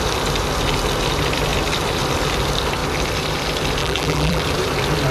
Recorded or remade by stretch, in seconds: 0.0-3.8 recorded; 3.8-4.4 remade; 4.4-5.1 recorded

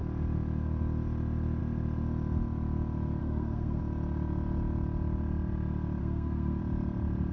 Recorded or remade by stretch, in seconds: 0.0-3.2 recorded; 3.2-3.8 remade; 3.8-6.0 recorded; 6.0-6.6 remade; 6.6-7.3 recorded

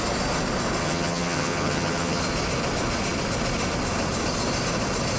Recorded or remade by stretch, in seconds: 0.0-0.8 recorded; 0.8-2.2 remade; 2.2-5.2 recorded

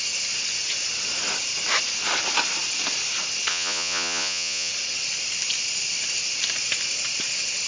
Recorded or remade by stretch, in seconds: 0.0-3.5 recorded; 3.5-4.7 remade; 4.7-7.7 recorded

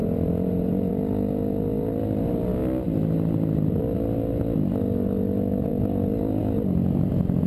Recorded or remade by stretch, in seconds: 0.0-0.9 remade; 0.9-7.5 recorded